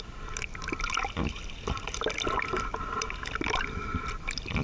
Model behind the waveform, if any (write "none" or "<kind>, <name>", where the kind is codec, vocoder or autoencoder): none